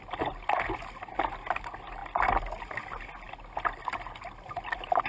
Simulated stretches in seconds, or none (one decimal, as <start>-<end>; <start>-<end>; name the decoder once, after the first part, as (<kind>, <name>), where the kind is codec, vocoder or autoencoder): none